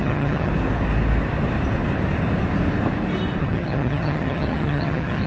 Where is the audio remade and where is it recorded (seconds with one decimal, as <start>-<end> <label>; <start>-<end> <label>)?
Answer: 0.0-0.5 remade; 0.5-3.4 recorded; 3.4-5.3 remade